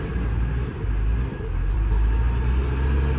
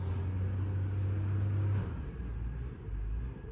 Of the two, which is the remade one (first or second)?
first